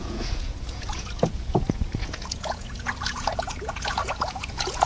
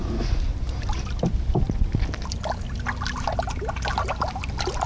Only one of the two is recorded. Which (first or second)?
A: second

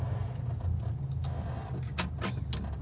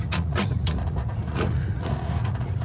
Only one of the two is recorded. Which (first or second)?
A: first